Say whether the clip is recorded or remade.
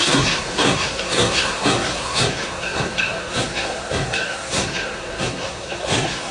remade